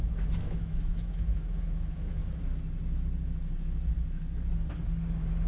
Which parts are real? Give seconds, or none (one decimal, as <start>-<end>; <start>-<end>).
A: 2.2-5.5